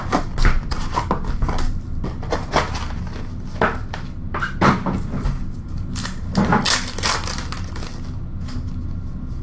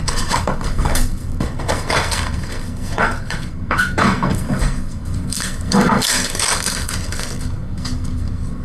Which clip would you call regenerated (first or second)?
second